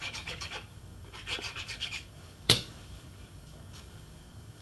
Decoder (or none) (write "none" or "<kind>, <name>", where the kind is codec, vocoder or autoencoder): codec, DAC